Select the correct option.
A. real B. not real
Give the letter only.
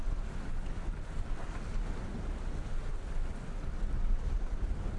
A